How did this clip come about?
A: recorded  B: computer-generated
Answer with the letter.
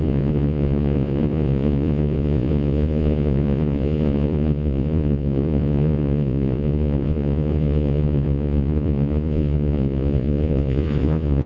B